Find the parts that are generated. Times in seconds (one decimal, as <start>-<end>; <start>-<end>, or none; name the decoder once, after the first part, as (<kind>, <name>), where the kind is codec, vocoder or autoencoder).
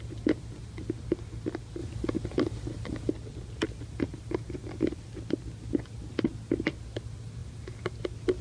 4.1-5.4 (vocoder, BigVGAN v2)